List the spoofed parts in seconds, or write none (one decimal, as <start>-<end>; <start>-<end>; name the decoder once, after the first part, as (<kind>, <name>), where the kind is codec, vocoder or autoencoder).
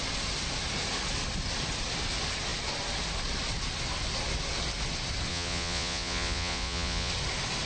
5.3-7.1 (vocoder, Vocos)